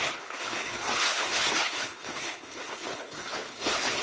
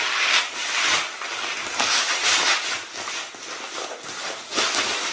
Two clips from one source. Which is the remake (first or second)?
first